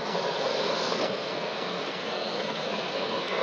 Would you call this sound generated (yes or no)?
yes